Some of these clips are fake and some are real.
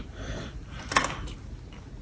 real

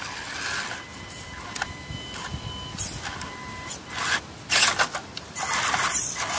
real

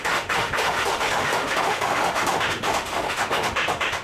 fake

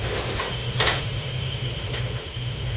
fake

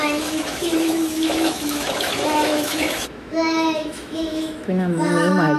fake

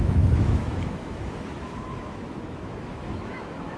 fake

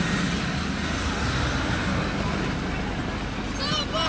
real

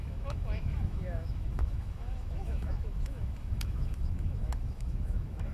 fake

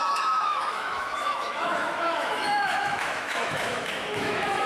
fake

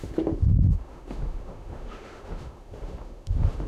fake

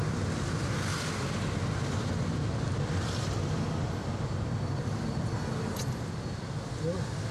real